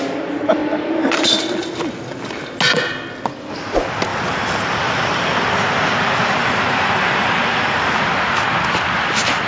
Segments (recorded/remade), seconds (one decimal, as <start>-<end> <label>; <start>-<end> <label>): 0.0-4.1 recorded; 4.1-5.5 remade; 5.5-6.4 recorded; 6.4-8.0 remade; 8.0-9.5 recorded